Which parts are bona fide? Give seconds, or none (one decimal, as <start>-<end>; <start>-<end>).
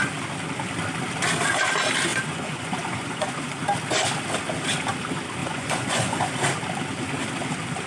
0.0-2.1; 3.6-5.4; 6.3-7.9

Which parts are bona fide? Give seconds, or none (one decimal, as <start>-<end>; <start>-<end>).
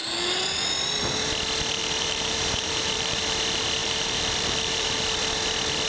0.0-1.8; 3.2-3.8; 5.0-5.9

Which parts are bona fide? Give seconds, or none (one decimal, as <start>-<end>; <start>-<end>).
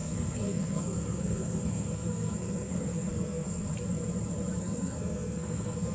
3.7-4.6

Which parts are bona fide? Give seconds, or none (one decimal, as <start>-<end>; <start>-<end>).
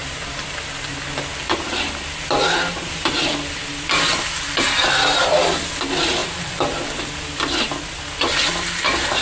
0.9-9.2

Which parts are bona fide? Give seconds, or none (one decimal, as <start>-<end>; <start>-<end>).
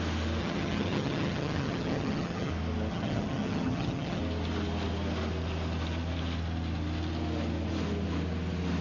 0.0-0.4; 2.5-2.9; 4.2-8.8